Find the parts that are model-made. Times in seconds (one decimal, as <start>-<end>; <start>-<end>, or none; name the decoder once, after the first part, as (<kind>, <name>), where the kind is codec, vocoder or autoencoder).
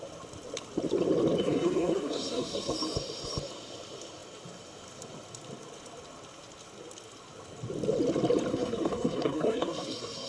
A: 1.4-2.7 (codec, SNAC); 8.5-10.3